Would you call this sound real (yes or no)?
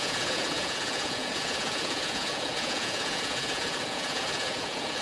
no